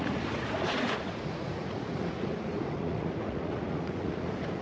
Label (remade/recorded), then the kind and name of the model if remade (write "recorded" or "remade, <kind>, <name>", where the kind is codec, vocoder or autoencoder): remade, vocoder, Vocos